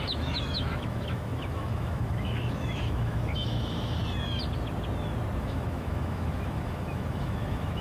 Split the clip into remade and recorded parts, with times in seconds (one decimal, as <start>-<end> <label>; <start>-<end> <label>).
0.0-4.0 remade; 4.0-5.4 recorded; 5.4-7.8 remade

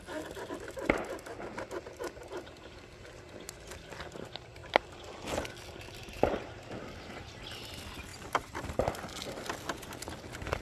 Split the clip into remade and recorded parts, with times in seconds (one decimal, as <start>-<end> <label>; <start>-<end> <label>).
0.0-4.6 recorded; 4.6-6.4 remade; 6.4-8.1 recorded; 8.1-8.9 remade; 8.9-10.6 recorded

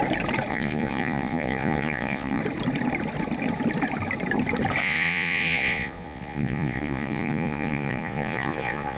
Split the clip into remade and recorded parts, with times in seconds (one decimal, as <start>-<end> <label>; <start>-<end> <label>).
0.0-0.5 recorded; 0.5-2.4 remade; 2.4-4.8 recorded; 4.8-9.0 remade

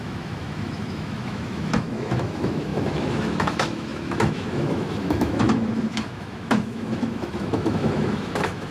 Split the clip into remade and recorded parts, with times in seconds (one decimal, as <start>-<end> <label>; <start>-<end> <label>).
0.0-8.7 remade

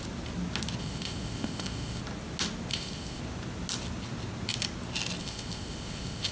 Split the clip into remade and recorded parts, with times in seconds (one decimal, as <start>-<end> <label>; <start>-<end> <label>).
0.0-0.8 recorded; 0.8-2.0 remade; 2.0-2.7 recorded; 2.7-3.2 remade; 3.2-5.2 recorded; 5.2-6.3 remade

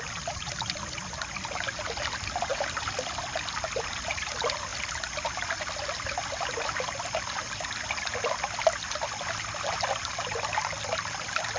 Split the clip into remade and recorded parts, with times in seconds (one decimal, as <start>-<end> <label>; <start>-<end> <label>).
0.0-11.6 recorded